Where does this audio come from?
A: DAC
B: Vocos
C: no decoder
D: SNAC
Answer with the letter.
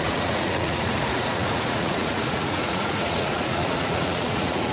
B